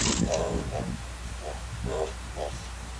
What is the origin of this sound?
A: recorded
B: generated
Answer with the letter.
A